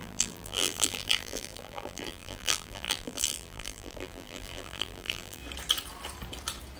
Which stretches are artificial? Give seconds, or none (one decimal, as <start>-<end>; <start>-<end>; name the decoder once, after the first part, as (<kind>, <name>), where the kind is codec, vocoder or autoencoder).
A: 0.0-5.4 (vocoder, BigVGAN v2)